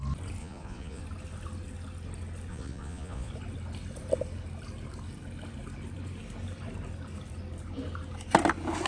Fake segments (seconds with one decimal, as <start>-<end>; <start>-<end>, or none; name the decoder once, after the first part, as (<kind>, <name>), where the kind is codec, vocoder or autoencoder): 0.4-1.0 (vocoder, Vocos); 2.5-3.3